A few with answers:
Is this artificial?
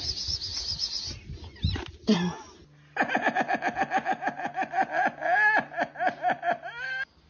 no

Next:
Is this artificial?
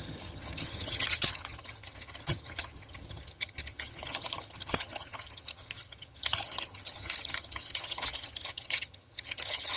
yes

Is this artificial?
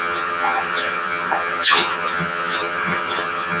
yes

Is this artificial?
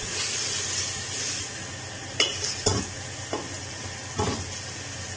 no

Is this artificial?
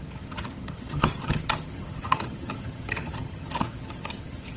yes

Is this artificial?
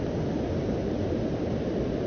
no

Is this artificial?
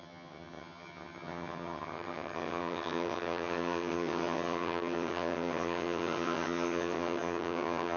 yes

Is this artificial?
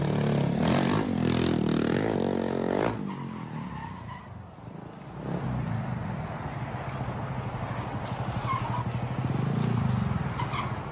no